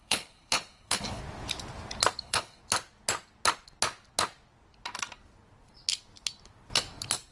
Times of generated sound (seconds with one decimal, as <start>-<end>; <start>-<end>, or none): 0.0-1.2; 2.2-2.6